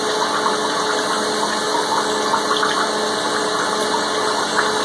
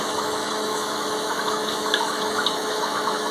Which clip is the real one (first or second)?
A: first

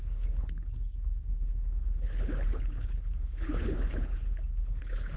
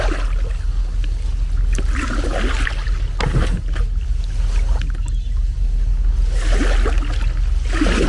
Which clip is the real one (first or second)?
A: second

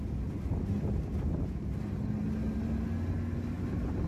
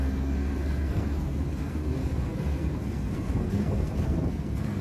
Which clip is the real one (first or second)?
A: first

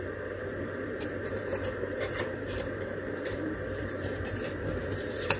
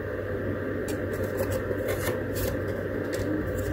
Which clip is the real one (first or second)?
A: second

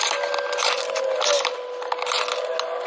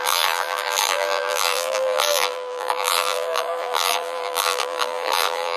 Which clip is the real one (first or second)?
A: first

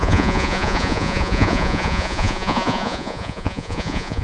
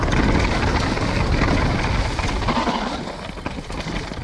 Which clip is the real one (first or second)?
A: second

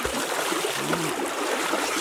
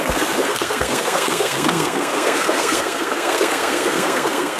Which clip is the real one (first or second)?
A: first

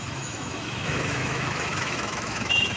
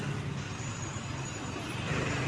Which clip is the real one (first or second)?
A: second